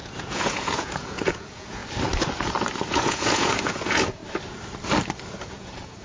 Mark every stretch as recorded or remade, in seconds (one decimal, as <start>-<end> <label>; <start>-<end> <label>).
0.0-1.8 remade; 1.8-2.9 recorded; 2.9-4.2 remade; 4.2-5.4 recorded; 5.4-6.0 remade

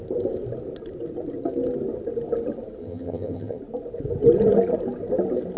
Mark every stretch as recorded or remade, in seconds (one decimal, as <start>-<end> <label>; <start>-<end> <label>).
0.0-2.8 recorded; 2.8-3.6 remade; 3.6-5.6 recorded

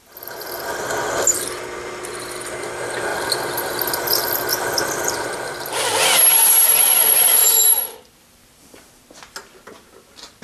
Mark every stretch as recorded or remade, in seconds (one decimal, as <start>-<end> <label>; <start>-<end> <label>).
0.0-3.1 recorded; 3.1-3.7 remade; 3.7-4.5 recorded; 4.5-5.8 remade; 5.8-7.4 recorded; 7.4-8.9 remade; 8.9-10.4 recorded

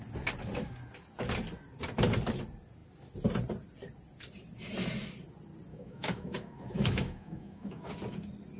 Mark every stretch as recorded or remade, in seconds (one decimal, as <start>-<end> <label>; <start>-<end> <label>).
0.0-5.7 recorded; 5.7-7.9 remade; 7.9-8.6 recorded

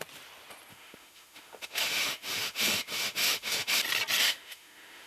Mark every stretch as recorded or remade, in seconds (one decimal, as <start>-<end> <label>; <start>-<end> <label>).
0.0-0.7 recorded; 0.7-3.8 remade; 3.8-4.2 recorded; 4.2-5.1 remade